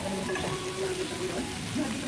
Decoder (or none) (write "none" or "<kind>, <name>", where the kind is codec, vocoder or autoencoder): none